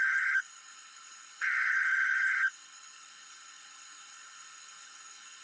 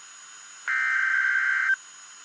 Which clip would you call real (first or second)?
second